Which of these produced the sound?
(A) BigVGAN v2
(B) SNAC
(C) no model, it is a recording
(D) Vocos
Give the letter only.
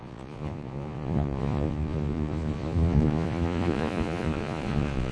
D